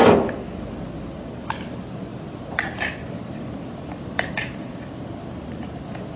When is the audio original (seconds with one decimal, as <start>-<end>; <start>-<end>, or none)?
0.0-2.1; 5.8-6.2

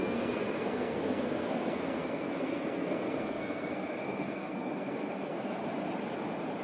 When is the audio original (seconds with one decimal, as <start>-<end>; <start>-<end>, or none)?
5.6-6.6

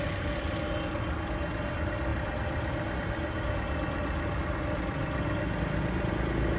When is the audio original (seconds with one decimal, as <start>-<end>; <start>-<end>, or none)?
0.0-6.6